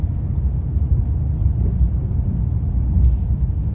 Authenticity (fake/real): real